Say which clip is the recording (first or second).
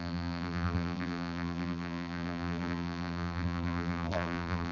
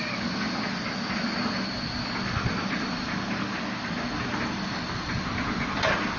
second